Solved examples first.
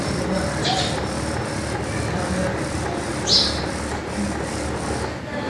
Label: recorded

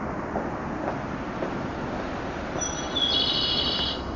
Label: recorded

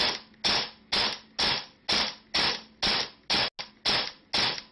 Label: recorded